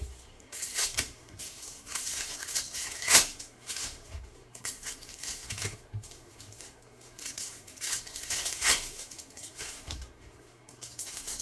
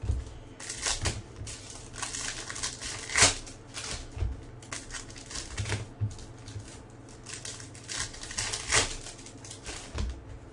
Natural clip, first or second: second